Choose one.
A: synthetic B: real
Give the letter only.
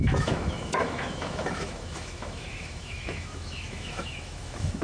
A